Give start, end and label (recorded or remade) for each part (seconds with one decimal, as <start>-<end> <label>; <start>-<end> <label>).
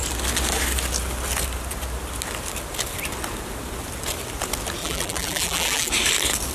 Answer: 0.0-4.8 recorded; 4.8-5.9 remade; 5.9-6.5 recorded